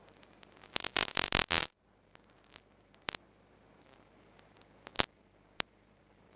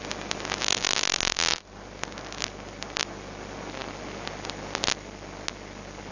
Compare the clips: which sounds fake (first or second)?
first